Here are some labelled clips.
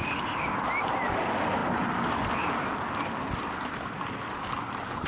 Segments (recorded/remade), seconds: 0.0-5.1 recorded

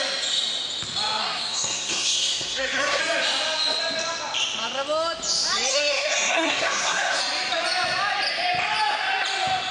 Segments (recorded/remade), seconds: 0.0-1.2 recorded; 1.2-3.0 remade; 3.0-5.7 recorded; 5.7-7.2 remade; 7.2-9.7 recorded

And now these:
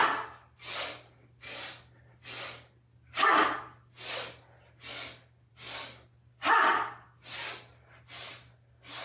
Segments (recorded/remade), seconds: 0.0-9.0 recorded